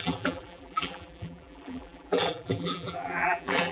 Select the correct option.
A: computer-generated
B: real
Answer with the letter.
A